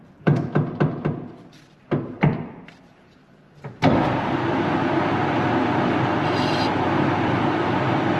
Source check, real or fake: fake